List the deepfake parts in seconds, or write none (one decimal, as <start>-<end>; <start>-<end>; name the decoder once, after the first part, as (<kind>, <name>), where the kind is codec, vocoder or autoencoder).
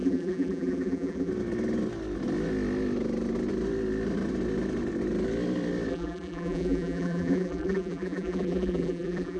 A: 0.0-1.3 (vocoder, BigVGAN v2); 5.9-9.4